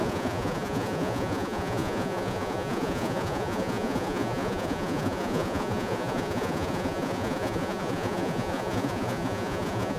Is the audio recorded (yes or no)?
no